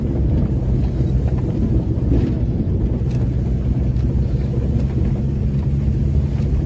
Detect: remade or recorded recorded